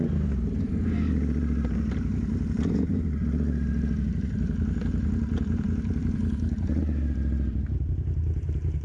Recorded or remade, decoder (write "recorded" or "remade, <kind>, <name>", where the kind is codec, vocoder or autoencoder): remade, vocoder, BigVGAN v2